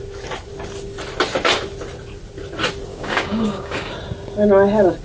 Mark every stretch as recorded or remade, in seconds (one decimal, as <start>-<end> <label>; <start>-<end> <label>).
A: 0.0-2.9 recorded; 2.9-3.9 remade; 3.9-5.0 recorded

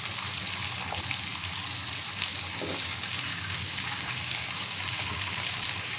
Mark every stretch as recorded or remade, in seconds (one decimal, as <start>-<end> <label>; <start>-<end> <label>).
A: 0.0-2.3 recorded; 2.3-6.0 remade

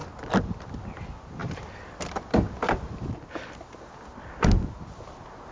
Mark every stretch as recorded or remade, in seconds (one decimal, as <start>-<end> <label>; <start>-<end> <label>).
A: 0.0-5.5 recorded

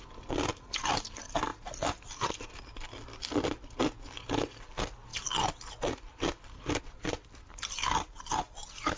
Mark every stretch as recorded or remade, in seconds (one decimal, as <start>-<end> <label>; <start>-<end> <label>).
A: 0.0-9.0 recorded

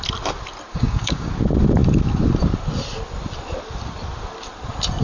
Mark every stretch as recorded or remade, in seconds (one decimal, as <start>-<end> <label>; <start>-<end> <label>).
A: 0.0-0.7 recorded; 0.7-1.3 remade; 1.3-5.0 recorded

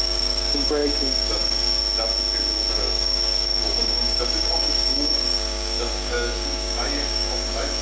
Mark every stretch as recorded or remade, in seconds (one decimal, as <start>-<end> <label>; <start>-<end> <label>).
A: 0.0-1.8 remade; 1.8-2.7 recorded; 2.7-7.8 remade

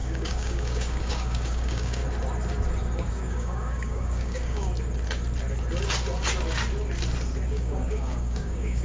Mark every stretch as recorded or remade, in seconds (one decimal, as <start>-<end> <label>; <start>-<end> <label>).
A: 0.0-2.0 remade; 2.0-3.1 recorded; 3.1-4.7 remade; 4.7-7.5 recorded; 7.5-8.8 remade